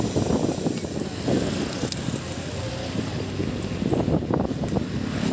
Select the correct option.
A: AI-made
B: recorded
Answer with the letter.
B